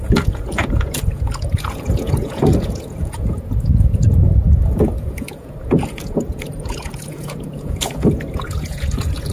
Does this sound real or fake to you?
fake